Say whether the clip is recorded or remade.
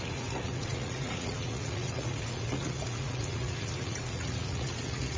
remade